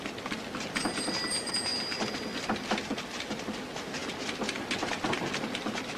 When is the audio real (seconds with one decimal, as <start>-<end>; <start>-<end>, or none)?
0.0-6.0